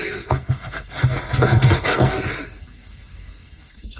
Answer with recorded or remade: remade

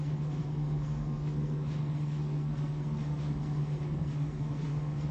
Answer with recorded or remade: remade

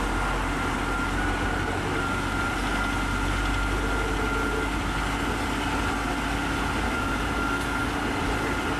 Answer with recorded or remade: recorded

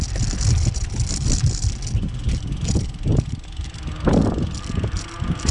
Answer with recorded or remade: recorded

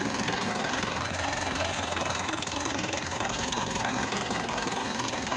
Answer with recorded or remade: remade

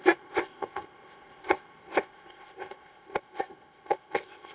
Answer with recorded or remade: remade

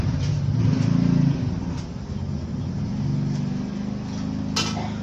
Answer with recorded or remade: recorded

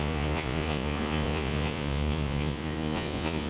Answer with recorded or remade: remade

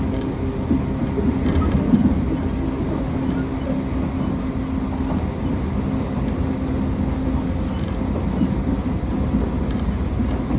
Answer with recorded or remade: recorded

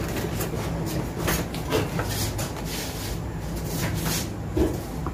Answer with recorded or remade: recorded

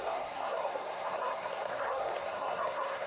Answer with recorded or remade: remade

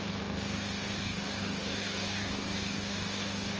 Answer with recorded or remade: remade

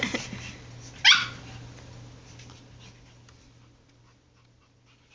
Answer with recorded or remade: recorded